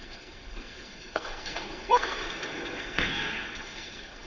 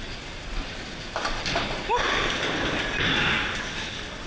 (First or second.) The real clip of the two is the second